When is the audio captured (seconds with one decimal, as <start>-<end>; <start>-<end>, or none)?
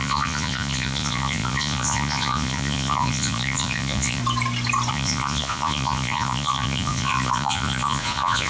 4.2-4.9